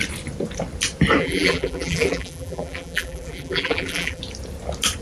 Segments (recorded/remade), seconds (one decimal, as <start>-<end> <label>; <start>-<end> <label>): 0.0-1.2 recorded; 1.2-4.2 remade; 4.2-5.0 recorded